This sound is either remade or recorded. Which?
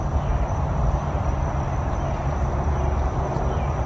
remade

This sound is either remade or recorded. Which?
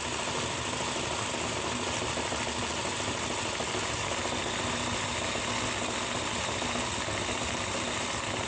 recorded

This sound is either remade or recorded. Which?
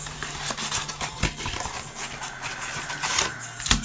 recorded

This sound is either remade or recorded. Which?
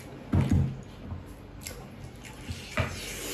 recorded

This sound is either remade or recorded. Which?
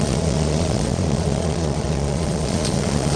remade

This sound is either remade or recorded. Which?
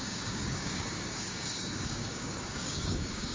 remade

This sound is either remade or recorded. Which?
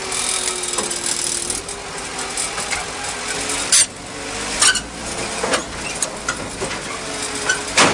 recorded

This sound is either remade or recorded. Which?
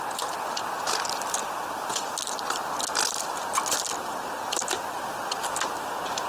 recorded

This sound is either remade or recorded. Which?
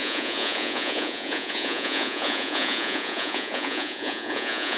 remade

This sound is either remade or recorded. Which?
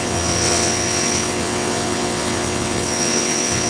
remade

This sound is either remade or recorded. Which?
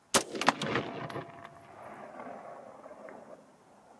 recorded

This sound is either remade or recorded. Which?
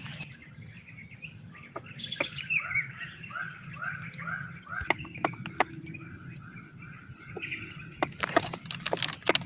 recorded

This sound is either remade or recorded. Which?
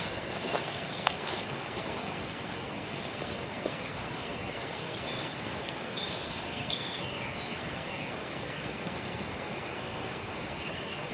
remade